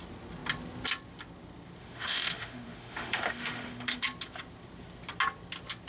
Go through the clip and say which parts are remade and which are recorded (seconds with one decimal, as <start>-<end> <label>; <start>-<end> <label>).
0.0-1.8 recorded; 1.8-4.0 remade; 4.0-5.9 recorded